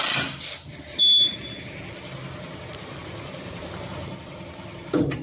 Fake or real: real